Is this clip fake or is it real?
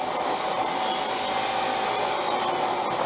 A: real